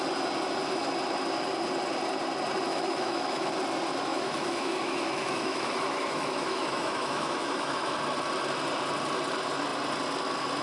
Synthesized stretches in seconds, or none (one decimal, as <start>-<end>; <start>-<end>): 2.7-3.5; 4.1-8.0